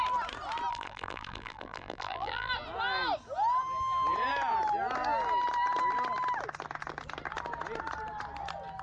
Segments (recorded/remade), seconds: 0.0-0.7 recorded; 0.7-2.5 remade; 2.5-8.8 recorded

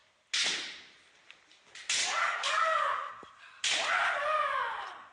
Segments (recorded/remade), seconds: 0.0-2.0 recorded; 2.0-3.1 remade; 3.1-5.1 recorded

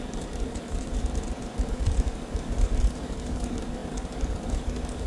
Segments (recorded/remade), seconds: 0.0-1.0 remade; 1.0-1.7 recorded; 1.7-5.1 remade

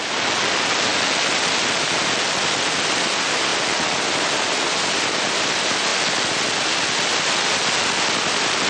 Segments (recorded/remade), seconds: 0.0-8.7 recorded

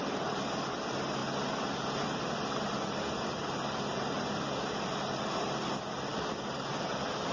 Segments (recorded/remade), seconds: 0.0-7.3 recorded

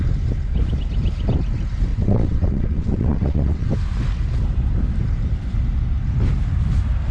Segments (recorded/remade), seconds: 0.0-1.9 recorded; 1.9-3.7 remade; 3.7-7.1 recorded

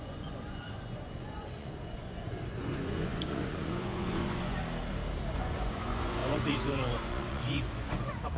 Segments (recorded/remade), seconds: 0.0-4.6 remade; 4.6-5.3 recorded; 5.3-8.4 remade

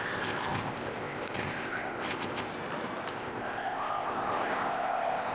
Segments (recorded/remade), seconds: 0.0-2.5 remade; 2.5-3.1 recorded; 3.1-5.3 remade